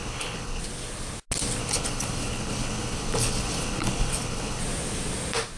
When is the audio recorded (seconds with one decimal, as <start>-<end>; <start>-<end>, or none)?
0.6-1.6; 4.6-5.6